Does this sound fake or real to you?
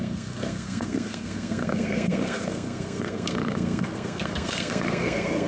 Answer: fake